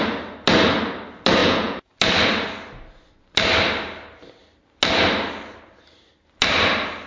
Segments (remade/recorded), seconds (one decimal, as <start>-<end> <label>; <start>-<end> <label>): 0.0-1.4 recorded; 1.4-1.9 remade; 1.9-7.1 recorded